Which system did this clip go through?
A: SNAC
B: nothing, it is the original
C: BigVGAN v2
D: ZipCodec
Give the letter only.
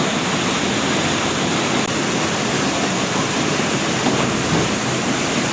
B